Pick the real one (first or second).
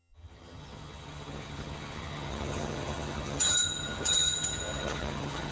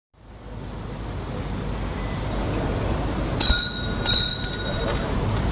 second